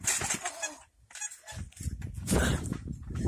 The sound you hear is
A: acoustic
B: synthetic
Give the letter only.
A